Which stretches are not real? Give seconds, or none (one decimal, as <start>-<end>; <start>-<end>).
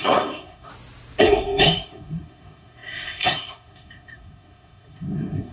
0.0-0.7; 1.2-5.5